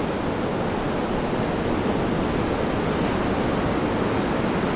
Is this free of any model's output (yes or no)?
yes